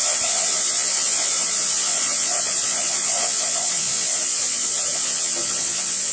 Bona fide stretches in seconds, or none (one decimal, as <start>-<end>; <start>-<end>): none